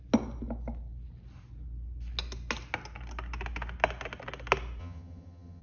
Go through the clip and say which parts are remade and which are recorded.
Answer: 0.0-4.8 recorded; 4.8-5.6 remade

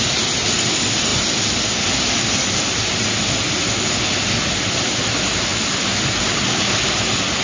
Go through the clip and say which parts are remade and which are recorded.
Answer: 0.0-7.4 recorded